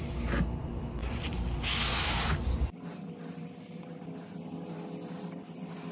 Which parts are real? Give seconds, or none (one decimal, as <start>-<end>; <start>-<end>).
0.0-5.9